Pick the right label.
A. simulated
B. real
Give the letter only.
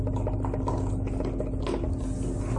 B